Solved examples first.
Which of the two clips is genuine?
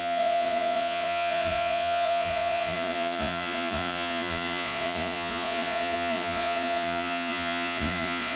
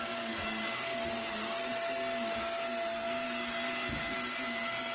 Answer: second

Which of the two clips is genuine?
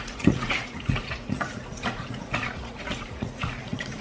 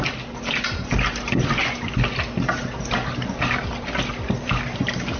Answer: second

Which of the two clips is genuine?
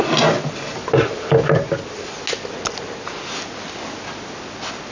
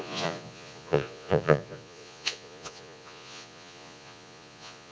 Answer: first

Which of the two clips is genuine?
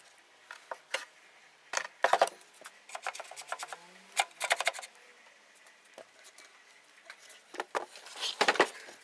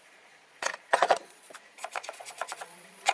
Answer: first